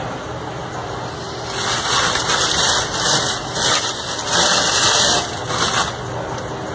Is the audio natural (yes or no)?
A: yes